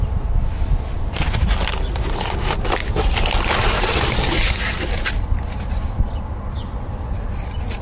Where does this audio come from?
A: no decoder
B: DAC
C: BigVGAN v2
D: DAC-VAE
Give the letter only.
A